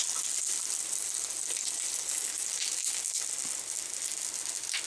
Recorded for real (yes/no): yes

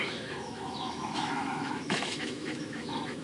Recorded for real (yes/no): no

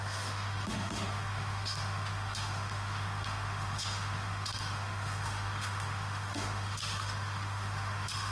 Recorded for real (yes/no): no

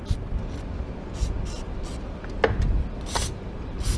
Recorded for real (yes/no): yes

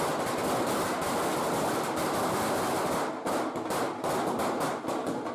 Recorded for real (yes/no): yes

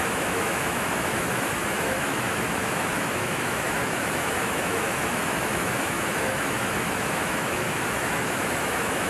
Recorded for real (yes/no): no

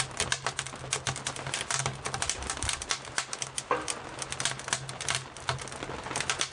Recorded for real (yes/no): yes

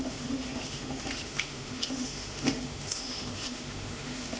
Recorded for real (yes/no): no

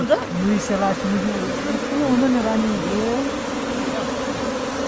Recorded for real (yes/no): yes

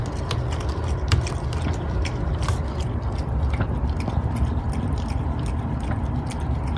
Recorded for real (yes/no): yes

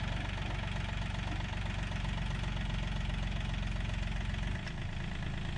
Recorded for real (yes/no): yes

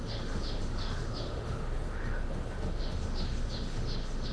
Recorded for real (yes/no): no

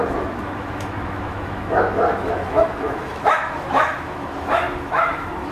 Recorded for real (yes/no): no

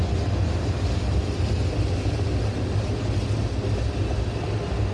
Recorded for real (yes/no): yes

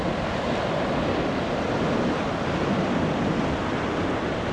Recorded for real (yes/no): yes